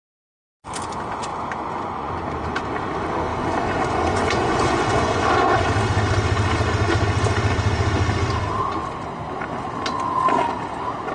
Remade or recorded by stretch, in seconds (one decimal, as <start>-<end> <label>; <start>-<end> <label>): 0.0-1.3 recorded; 1.3-2.1 remade; 2.1-3.3 recorded; 3.3-5.2 remade; 5.2-11.1 recorded